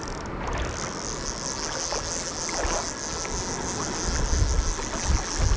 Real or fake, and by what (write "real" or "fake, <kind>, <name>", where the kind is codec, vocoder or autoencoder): real